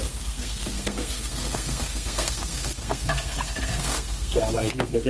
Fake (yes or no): yes